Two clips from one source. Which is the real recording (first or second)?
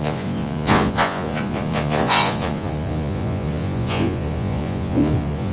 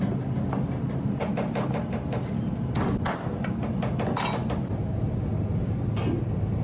second